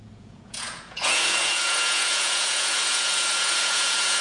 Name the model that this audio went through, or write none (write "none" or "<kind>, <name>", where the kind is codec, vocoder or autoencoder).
vocoder, Vocos